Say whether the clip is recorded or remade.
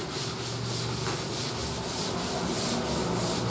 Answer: recorded